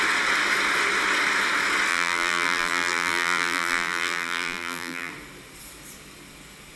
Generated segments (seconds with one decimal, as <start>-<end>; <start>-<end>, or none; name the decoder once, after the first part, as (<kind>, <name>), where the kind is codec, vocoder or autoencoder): 1.9-5.1 (vocoder, BigVGAN v2)